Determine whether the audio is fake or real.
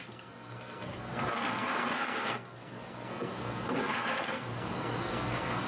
fake